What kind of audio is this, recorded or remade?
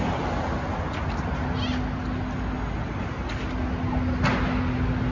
recorded